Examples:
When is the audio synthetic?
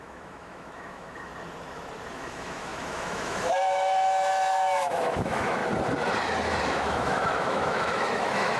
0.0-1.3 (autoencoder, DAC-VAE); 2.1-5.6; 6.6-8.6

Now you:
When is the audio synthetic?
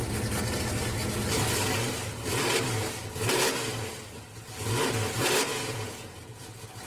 5.5-6.5 (vocoder, Vocos)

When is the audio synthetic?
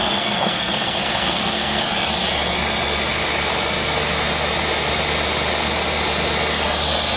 0.0-1.8 (codec, SNAC)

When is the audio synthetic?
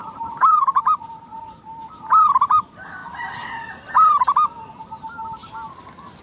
0.0-1.8 (vocoder, BigVGAN v2); 2.5-3.0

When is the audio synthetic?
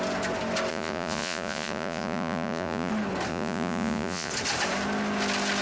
0.7-2.9 (vocoder, Vocos); 3.3-4.3